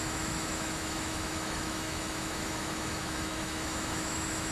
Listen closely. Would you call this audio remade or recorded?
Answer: remade